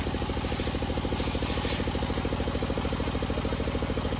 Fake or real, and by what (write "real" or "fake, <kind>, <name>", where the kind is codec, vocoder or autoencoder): real